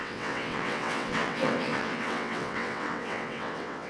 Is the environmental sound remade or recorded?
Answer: remade